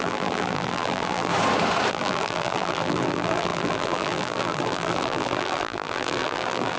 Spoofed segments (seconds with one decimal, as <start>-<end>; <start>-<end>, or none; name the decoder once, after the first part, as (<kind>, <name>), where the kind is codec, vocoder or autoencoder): 0.0-1.3 (vocoder, BigVGAN v2); 1.9-6.8